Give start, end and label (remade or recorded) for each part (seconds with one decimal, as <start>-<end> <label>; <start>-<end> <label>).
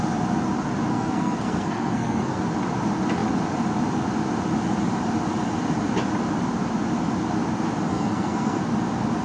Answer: 0.0-0.9 recorded; 0.9-2.4 remade; 2.4-7.9 recorded; 7.9-8.6 remade; 8.6-9.2 recorded